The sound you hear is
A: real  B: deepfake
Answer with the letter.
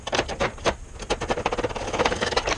A